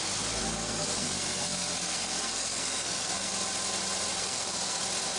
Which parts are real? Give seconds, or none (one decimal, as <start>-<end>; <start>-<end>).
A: 0.0-0.4; 3.3-4.1; 4.8-5.2